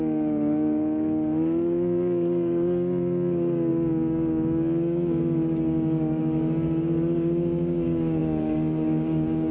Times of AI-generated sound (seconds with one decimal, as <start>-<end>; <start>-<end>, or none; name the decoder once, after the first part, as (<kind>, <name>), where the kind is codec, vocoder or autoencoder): 0.0-9.5 (codec, DAC)